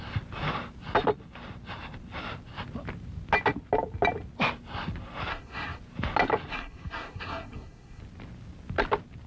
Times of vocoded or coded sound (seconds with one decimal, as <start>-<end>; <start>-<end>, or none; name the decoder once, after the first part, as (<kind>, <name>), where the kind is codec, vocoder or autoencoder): 5.3-5.8 (codec, SNAC); 6.5-8.0